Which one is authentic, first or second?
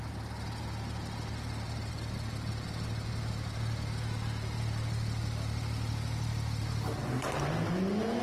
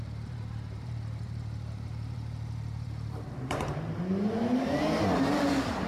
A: first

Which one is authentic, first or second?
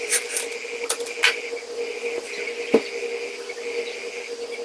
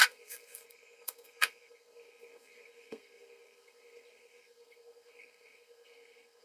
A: first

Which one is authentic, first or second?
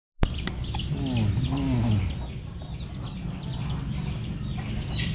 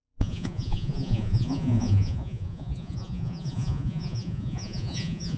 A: first